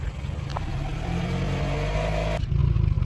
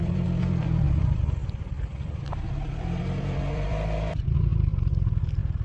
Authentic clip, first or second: first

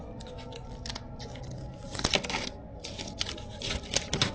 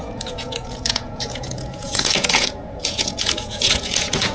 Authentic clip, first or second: first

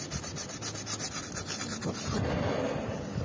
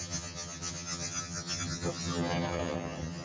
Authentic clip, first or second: first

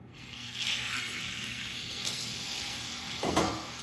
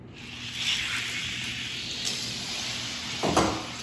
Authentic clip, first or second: second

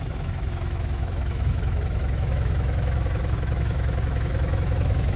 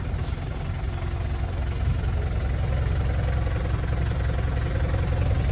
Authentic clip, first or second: second